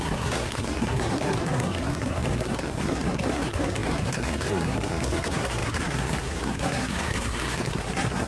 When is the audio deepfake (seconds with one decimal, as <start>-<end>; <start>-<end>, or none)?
0.0-8.3